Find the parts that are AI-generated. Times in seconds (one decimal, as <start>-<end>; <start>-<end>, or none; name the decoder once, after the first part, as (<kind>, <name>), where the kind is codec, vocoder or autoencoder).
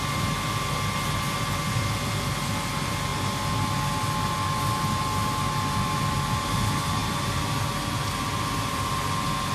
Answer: 8.3-8.9 (vocoder, BigVGAN v2)